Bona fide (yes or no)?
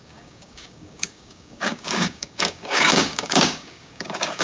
no